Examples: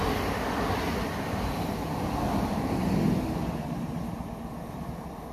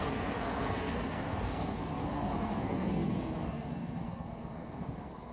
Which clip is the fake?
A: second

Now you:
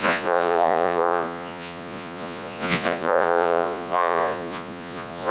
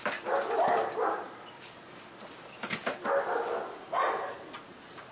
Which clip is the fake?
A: first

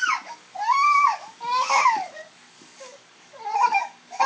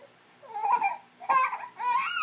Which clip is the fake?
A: first